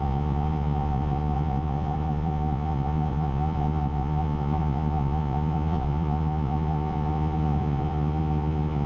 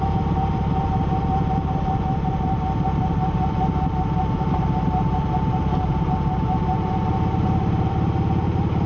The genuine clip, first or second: second